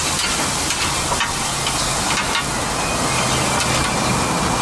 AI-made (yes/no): no